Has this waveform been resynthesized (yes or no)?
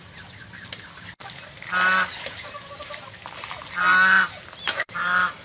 no